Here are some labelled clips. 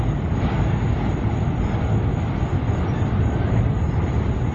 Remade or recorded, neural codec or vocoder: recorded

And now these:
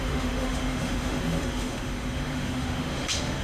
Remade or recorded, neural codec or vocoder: remade, autoencoder, DAC-VAE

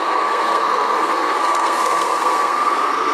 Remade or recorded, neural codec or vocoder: remade, codec, SNAC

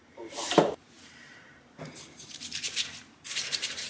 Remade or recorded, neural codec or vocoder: remade, vocoder, BigVGAN v2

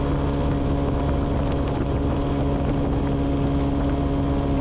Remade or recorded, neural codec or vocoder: recorded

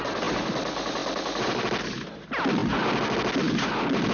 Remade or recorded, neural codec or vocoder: recorded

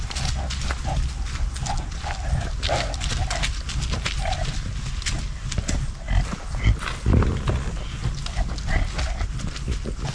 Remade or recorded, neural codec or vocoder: recorded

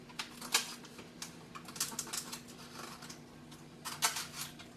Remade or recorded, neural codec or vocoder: recorded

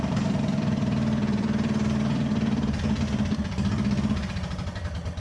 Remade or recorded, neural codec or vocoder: remade, vocoder, BigVGAN v2